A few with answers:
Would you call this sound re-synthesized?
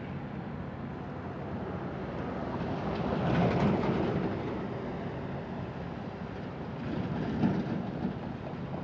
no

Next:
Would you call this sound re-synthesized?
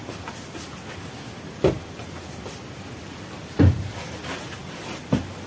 no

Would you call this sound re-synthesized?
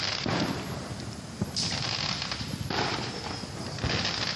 no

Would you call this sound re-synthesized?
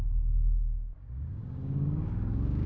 yes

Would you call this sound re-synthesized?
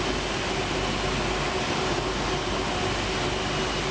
no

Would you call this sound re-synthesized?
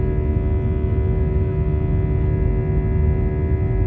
no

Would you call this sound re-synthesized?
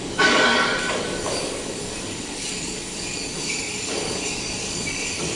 yes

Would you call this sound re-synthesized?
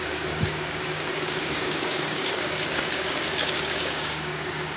yes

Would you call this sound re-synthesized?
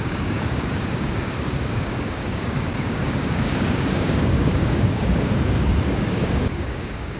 yes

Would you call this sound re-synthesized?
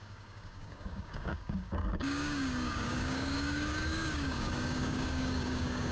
yes